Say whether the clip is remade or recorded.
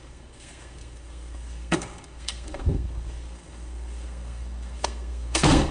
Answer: remade